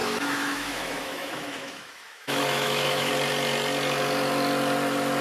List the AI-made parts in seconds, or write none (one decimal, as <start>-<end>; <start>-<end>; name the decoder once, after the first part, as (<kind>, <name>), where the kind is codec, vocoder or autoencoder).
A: 0.0-3.1 (autoencoder, DAC-VAE)